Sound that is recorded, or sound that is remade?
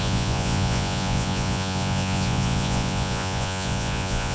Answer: remade